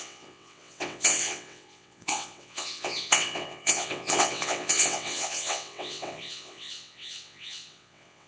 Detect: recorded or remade remade